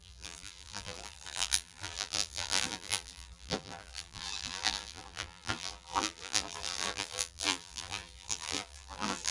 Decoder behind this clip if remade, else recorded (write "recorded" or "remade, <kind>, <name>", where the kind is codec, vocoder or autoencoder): remade, vocoder, BigVGAN v2